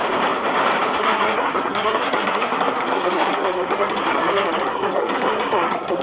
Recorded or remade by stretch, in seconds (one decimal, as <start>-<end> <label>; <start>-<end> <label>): 0.0-1.0 recorded; 1.0-6.0 remade